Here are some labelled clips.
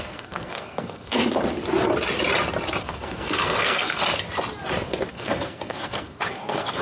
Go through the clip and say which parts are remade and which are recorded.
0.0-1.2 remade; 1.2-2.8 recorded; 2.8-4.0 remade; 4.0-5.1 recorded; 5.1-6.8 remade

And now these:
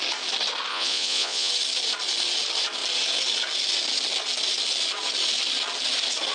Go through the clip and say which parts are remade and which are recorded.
0.0-0.7 recorded; 0.7-1.5 remade; 1.5-6.3 recorded